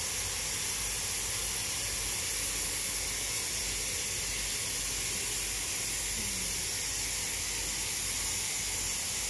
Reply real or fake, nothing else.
real